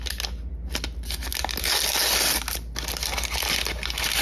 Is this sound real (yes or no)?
yes